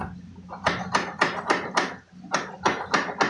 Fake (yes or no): no